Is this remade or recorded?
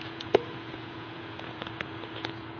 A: remade